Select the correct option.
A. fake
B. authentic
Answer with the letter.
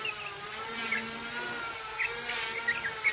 B